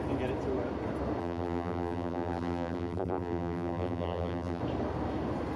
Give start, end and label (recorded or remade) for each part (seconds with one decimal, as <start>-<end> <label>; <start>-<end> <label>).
0.0-1.2 recorded; 1.2-4.6 remade; 4.6-5.6 recorded